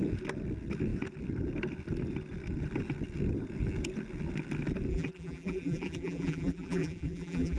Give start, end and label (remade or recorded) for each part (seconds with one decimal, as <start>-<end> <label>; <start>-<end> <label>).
0.0-4.9 recorded; 4.9-7.6 remade